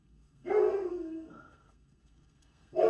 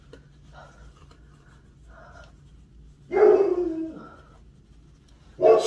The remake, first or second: first